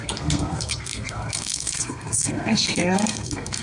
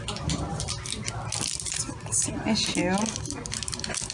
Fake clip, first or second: first